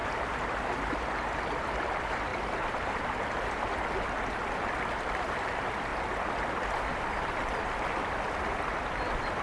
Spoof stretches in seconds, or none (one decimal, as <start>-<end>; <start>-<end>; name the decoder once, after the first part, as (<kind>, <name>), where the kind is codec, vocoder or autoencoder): 0.0-1.0 (vocoder, BigVGAN v2); 2.3-3.6